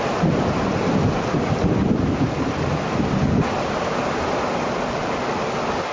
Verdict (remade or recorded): recorded